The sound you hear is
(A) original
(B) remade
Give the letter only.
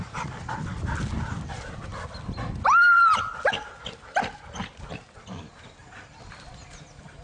A